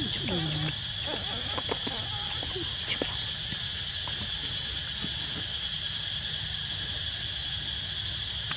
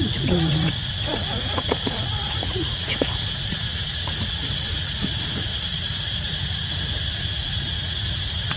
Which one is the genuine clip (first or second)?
first